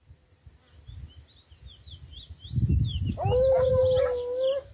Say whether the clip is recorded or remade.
recorded